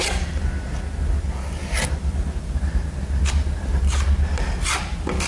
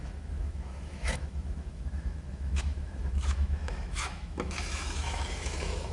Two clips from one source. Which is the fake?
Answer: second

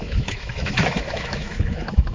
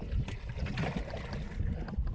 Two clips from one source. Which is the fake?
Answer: first